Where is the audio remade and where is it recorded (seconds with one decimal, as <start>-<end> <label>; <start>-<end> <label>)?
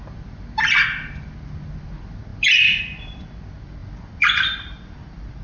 0.0-5.4 recorded